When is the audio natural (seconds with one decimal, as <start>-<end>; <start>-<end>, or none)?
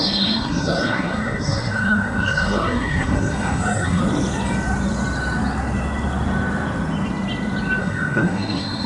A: 4.0-7.8